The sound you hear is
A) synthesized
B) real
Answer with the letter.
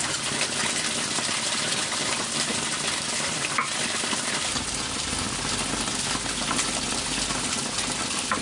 B